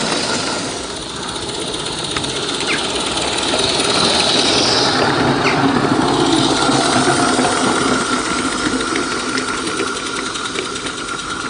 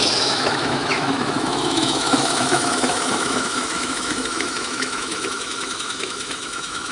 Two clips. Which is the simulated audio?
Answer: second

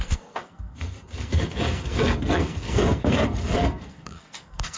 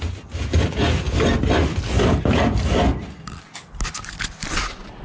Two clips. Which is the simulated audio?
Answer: first